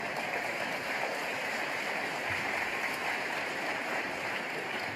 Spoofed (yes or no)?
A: yes